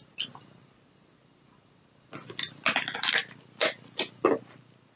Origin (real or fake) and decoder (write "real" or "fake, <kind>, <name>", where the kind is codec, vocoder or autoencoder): real